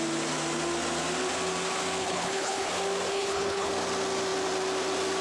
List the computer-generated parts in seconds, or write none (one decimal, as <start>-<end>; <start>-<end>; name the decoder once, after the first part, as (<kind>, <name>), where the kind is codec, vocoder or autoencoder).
2.0-2.7 (codec, HILCodec); 3.1-3.7